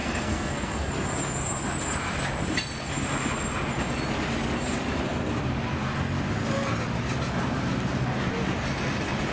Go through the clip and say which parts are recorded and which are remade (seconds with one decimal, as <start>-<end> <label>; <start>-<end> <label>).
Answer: 0.0-0.9 remade; 0.9-9.3 recorded